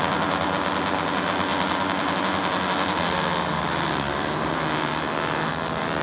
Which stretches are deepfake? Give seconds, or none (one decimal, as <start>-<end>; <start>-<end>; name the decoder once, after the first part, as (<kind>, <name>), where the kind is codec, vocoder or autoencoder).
none